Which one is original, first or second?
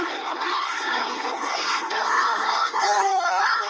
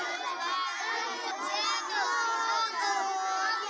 second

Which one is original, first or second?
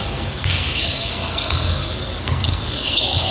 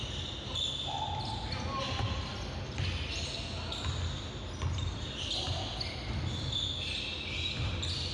second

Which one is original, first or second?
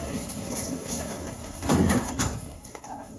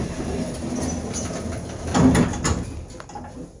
second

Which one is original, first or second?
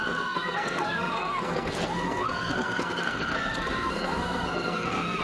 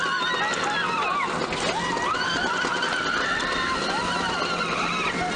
second